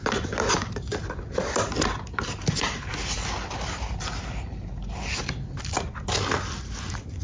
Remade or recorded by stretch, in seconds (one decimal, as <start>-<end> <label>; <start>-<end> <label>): 0.0-7.2 recorded